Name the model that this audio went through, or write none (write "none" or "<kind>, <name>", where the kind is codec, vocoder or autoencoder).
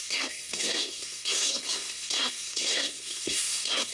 codec, SNAC